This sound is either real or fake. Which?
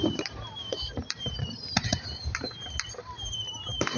fake